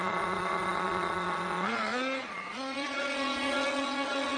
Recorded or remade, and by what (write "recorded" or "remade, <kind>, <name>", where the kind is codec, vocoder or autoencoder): remade, vocoder, Vocos